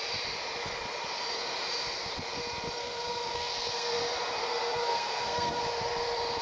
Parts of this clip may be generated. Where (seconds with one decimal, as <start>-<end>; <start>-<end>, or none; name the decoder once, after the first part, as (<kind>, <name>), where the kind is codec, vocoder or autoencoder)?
2.8-4.0 (codec, SNAC); 4.4-5.6